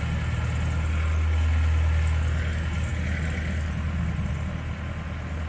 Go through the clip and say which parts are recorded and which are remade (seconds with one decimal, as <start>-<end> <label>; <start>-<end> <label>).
0.0-5.5 recorded